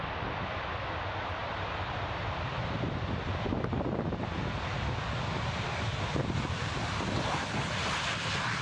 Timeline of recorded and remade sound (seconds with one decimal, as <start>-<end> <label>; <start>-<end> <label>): 0.0-8.6 recorded